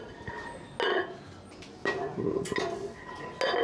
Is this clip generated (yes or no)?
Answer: no